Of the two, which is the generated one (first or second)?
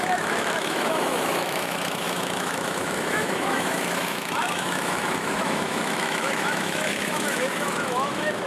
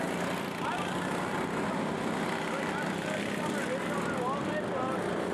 first